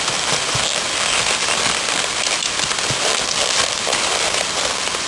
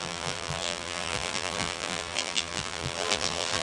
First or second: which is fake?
second